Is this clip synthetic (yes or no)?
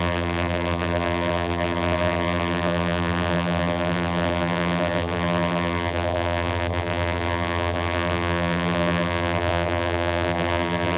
yes